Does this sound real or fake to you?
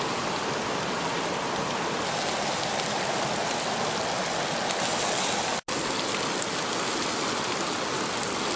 real